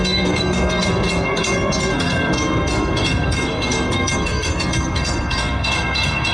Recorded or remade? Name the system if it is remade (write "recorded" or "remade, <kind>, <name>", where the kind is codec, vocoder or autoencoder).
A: remade, codec, SNAC